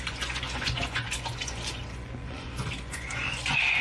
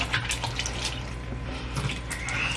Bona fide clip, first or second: second